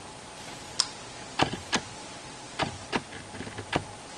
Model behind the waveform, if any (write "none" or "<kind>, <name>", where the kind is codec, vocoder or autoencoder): none